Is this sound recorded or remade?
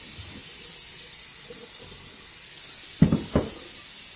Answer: recorded